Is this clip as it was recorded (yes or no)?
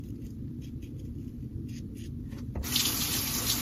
yes